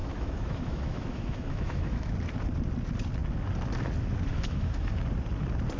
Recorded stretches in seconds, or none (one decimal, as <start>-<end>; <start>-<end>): 2.1-4.3; 5.0-5.8